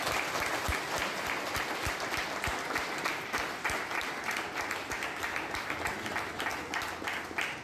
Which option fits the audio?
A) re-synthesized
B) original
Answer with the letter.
B